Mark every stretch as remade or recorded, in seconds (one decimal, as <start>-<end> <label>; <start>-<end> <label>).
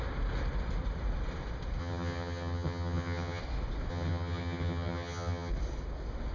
0.0-1.8 recorded; 1.8-3.4 remade; 3.4-3.9 recorded; 3.9-5.5 remade; 5.5-6.3 recorded